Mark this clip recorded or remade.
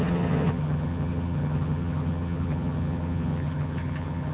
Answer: remade